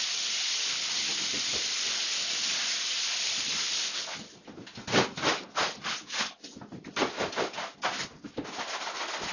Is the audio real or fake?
real